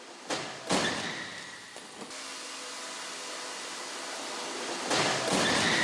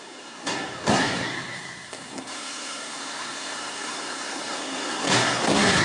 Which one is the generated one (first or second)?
second